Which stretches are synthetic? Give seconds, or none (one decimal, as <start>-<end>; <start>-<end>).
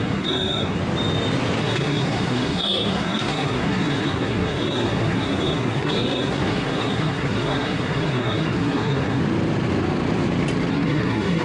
0.0-0.8; 1.6-9.2; 10.7-11.4